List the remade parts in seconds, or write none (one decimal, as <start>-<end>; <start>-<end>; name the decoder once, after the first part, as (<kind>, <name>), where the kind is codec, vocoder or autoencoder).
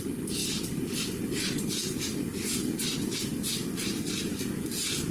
none